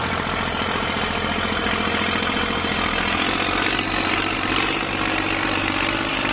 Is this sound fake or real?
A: real